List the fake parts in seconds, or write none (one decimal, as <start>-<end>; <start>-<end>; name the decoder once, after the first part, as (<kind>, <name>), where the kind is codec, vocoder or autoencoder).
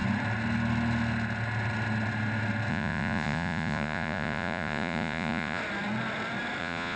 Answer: 2.7-5.6 (vocoder, Vocos); 6.6-7.0